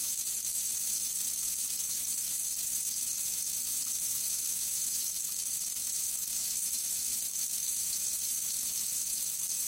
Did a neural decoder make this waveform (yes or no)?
yes